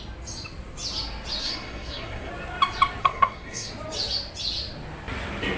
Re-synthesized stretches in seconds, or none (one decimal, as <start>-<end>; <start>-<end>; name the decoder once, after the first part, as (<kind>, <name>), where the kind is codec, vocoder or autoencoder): 1.4-2.3 (codec, SNAC); 3.0-3.7